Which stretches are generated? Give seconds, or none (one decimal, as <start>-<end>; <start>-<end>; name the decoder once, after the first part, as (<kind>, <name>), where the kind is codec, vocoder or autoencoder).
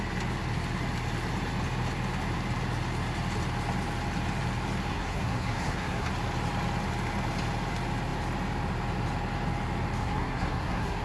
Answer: 4.9-6.1 (codec, SNAC); 10.0-11.0